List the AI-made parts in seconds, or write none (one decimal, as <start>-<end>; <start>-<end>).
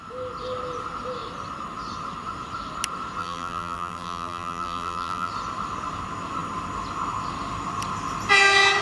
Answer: 3.2-5.3